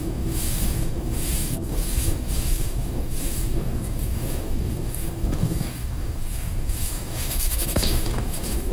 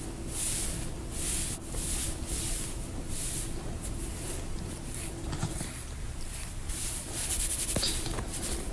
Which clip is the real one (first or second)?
second